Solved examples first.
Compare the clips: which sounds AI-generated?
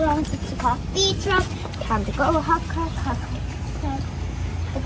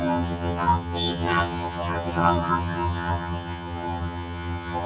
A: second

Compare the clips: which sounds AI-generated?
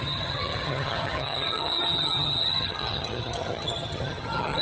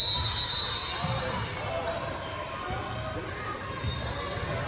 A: first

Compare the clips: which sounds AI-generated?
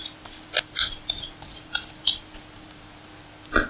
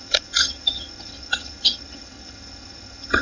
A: second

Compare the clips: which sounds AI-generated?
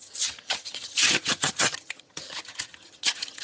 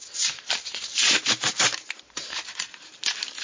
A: first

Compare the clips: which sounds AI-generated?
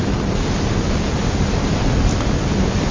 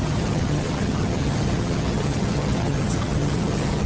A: second